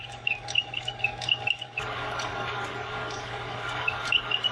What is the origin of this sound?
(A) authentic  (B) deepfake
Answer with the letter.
B